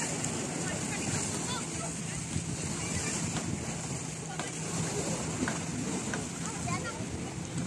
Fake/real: real